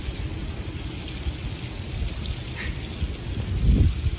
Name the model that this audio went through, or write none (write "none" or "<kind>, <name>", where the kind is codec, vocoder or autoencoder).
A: none